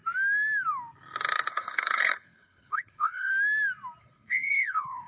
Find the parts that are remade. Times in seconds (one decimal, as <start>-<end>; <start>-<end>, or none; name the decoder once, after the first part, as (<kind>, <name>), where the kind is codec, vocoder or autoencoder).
1.5-3.3 (codec, HILCodec); 4.0-5.1